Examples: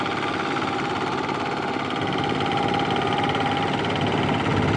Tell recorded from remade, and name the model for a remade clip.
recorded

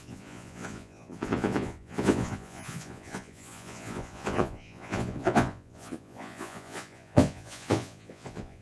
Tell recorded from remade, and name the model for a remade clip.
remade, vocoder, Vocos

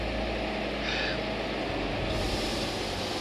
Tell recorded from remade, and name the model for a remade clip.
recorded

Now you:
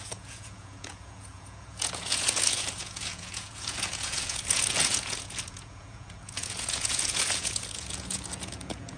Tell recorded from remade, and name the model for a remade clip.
remade, vocoder, Vocos